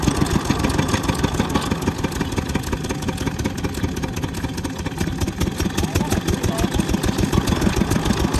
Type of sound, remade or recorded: recorded